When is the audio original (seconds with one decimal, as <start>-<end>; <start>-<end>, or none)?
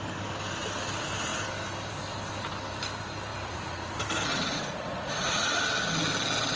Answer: 0.0-3.3; 3.9-4.3; 5.6-6.6